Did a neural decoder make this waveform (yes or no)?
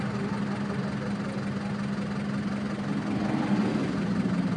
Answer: no